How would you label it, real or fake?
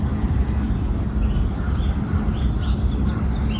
real